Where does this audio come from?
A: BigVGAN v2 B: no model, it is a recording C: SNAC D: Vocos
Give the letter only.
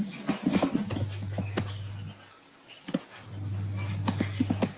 B